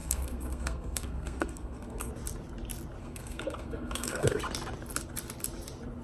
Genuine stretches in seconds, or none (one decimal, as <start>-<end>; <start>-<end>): 2.1-3.0; 4.4-6.0